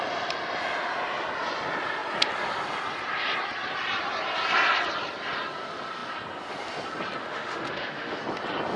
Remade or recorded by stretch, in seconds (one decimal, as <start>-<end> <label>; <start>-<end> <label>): 0.0-7.2 recorded; 7.2-8.2 remade; 8.2-8.8 recorded